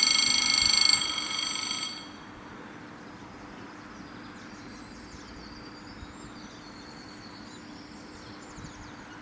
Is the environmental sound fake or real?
real